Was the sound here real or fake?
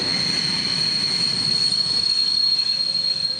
real